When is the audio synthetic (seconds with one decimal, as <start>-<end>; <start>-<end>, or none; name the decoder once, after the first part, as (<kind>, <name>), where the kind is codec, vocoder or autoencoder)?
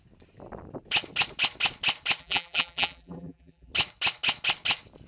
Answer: 2.2-3.7 (vocoder, BigVGAN v2)